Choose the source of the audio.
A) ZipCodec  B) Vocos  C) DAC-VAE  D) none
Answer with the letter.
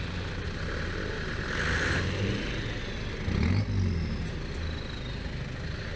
D